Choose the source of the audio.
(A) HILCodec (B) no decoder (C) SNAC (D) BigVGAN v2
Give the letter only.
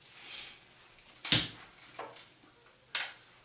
B